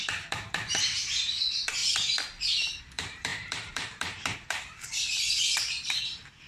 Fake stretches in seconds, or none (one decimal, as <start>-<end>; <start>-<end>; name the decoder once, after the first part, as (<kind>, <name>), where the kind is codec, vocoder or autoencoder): 0.0-1.8 (vocoder, BigVGAN v2); 2.8-6.5